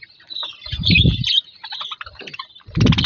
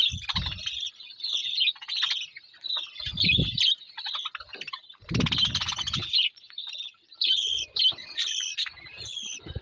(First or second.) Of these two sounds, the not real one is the first